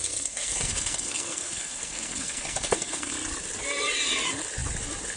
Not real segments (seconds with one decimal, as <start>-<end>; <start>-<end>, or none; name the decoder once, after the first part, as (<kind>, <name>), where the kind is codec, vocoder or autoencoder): 0.0-3.1 (codec, SNAC)